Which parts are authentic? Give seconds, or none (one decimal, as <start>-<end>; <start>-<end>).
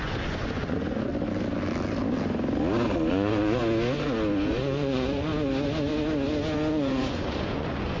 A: 1.1-3.1; 3.6-4.5; 5.3-6.7